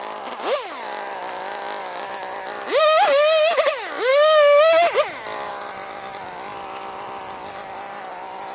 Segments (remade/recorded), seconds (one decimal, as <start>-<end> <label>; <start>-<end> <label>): 0.0-8.5 recorded